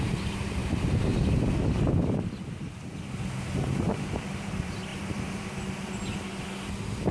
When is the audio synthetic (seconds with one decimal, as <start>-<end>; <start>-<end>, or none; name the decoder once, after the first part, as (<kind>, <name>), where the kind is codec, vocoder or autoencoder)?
0.0-0.6 (vocoder, BigVGAN v2); 3.4-4.9